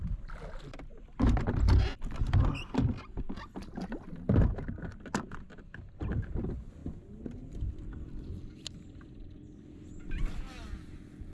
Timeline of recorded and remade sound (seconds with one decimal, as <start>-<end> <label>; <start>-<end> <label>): 0.0-0.9 remade; 0.9-5.5 recorded; 5.5-6.8 remade; 6.8-7.5 recorded; 7.5-11.3 remade